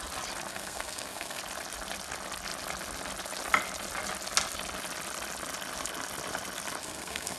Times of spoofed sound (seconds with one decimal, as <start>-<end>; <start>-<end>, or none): 0.5-1.4; 6.8-7.4